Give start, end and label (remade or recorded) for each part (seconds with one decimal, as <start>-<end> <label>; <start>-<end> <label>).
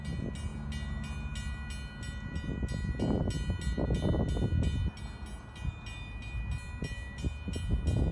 0.0-8.1 recorded